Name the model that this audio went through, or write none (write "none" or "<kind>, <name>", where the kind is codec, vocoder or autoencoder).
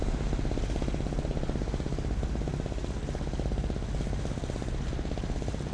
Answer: none